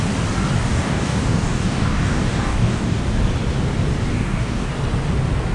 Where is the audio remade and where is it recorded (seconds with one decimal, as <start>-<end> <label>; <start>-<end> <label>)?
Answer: 0.0-0.6 recorded; 0.6-3.0 remade; 3.0-4.1 recorded; 4.1-4.7 remade; 4.7-5.5 recorded